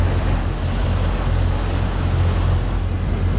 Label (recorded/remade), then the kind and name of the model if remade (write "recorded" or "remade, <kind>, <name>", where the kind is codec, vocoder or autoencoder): recorded